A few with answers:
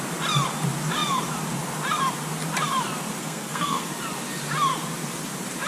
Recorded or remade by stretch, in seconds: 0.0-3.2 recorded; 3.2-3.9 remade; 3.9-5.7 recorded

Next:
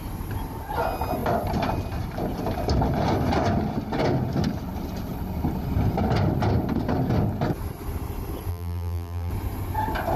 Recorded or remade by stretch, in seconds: 0.0-8.5 recorded; 8.5-9.3 remade; 9.3-10.2 recorded

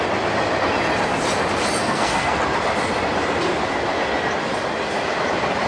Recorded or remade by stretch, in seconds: 0.0-1.8 recorded; 1.8-2.4 remade; 2.4-5.7 recorded

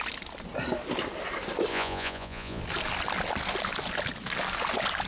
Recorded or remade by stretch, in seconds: 0.0-1.7 recorded; 1.7-2.6 remade; 2.6-5.1 recorded

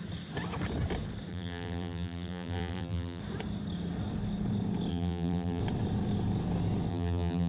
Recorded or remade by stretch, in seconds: 0.0-1.3 recorded; 1.3-3.2 remade; 3.2-4.9 recorded; 4.9-5.6 remade; 5.6-6.9 recorded; 6.9-7.5 remade

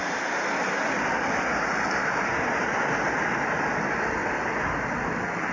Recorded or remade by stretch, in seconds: 0.0-5.5 recorded